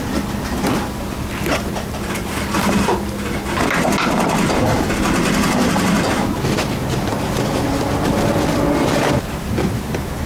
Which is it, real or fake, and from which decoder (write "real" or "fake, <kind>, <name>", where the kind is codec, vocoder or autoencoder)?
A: real